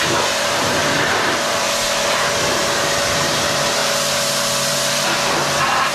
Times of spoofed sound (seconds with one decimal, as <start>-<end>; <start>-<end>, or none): 0.0-5.9